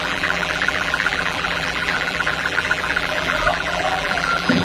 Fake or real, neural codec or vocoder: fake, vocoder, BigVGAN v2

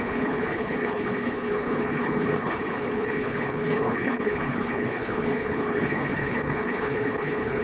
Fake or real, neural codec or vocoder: fake, codec, HILCodec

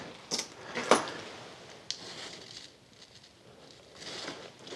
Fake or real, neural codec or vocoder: real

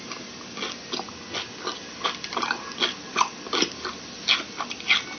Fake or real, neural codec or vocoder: real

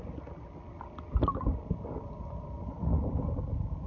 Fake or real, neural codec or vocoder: real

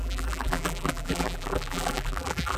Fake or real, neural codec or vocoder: fake, vocoder, BigVGAN v2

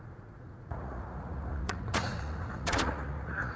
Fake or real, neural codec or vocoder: fake, vocoder, Vocos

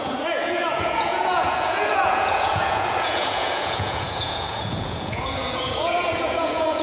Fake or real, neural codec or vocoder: fake, vocoder, Vocos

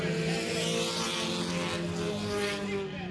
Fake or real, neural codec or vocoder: real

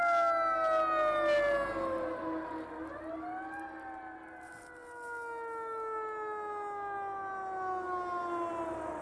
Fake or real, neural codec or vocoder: real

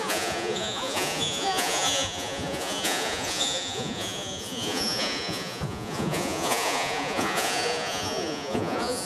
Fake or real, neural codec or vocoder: fake, vocoder, Vocos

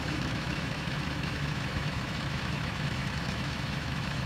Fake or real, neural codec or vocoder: fake, autoencoder, DAC-VAE